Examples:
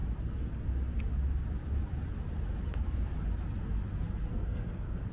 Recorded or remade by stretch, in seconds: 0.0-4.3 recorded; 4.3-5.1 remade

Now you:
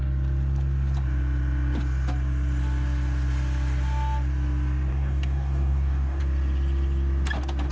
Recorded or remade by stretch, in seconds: 0.0-4.9 recorded; 4.9-6.2 remade; 6.2-7.7 recorded

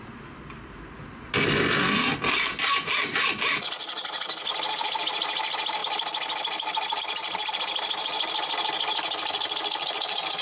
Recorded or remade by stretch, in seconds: 0.0-10.4 recorded

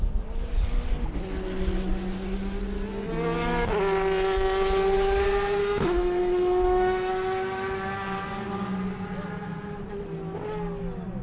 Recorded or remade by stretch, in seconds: 0.0-5.6 recorded; 5.6-7.1 remade; 7.1-11.2 recorded